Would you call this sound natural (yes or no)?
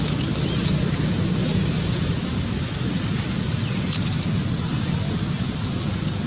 yes